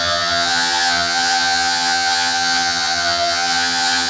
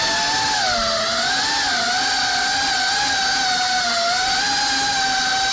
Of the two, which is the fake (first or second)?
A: first